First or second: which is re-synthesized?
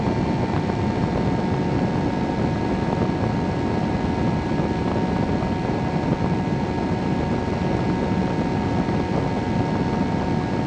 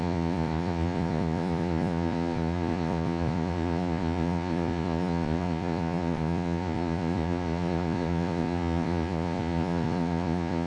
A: second